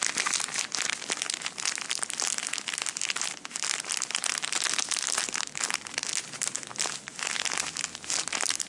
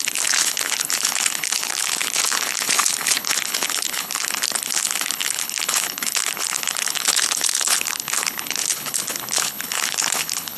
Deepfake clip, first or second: second